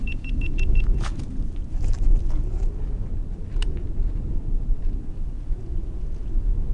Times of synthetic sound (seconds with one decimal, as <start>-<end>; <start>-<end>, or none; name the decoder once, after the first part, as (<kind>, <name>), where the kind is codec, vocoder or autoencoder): 0.0-1.1 (vocoder, Vocos); 5.1-6.7

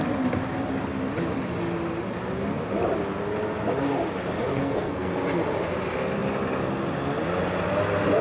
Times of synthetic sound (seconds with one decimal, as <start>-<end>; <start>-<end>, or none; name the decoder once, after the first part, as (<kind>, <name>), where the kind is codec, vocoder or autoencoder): 4.5-5.1 (codec, SNAC)

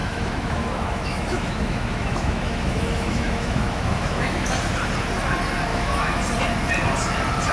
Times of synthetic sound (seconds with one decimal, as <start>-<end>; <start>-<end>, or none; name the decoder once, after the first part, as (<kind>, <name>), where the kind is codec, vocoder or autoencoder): 0.0-4.5 (autoencoder, DAC-VAE); 5.7-6.2

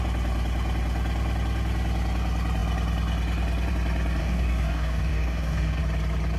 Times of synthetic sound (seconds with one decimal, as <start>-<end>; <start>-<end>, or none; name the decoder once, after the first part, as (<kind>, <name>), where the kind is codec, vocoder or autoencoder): 4.2-5.8 (codec, DAC)

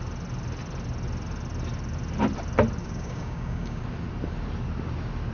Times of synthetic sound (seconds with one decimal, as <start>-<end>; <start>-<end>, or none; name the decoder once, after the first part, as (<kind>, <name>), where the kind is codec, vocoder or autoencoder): 2.8-3.8 (codec, DAC)

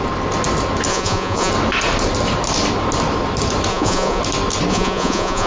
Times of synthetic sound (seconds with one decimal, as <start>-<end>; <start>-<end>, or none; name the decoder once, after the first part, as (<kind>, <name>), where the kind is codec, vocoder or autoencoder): 0.9-1.5 (vocoder, Vocos); 3.7-4.2; 4.7-5.5